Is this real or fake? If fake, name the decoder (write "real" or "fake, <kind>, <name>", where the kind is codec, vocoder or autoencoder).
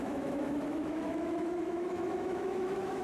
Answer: fake, autoencoder, DAC-VAE